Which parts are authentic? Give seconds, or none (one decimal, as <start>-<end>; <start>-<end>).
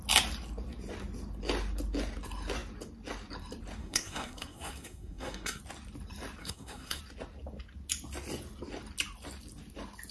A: 0.0-3.8; 5.6-6.4; 7.0-10.1